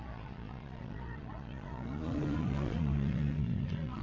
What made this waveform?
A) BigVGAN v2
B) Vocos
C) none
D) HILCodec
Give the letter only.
B